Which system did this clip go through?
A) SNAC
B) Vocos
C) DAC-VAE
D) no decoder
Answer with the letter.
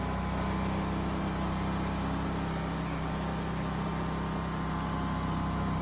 D